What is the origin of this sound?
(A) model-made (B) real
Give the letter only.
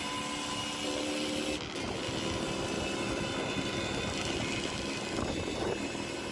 B